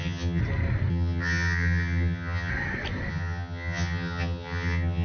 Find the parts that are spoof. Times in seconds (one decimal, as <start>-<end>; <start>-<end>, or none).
0.0-0.4; 0.9-2.5; 3.1-5.0